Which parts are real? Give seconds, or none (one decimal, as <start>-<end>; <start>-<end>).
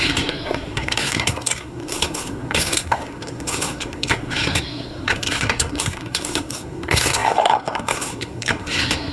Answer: none